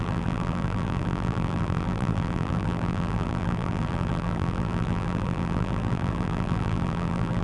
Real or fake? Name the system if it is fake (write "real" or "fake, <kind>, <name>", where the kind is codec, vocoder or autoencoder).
fake, vocoder, BigVGAN v2